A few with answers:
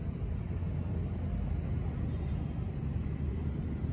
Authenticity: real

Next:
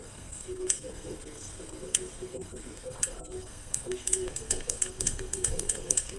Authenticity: fake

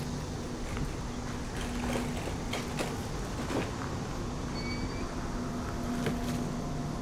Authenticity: real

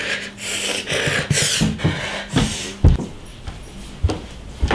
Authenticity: real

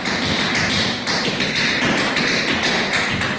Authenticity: real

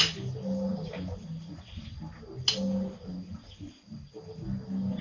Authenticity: real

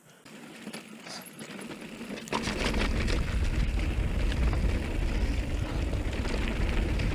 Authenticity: real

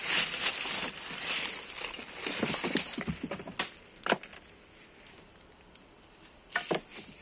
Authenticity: real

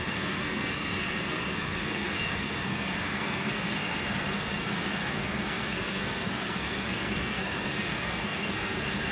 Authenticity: fake